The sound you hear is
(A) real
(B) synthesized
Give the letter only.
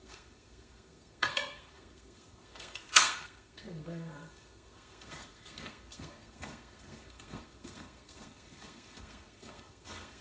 B